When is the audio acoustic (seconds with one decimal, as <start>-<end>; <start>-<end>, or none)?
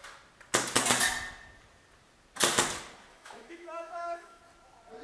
0.0-3.1; 4.4-5.0